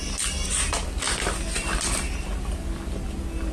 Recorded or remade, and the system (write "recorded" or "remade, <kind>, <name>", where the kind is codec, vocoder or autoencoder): recorded